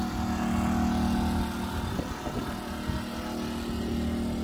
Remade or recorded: recorded